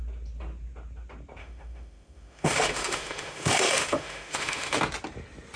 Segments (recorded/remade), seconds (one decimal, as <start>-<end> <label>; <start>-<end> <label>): 0.0-1.4 recorded; 1.4-4.8 remade; 4.8-5.6 recorded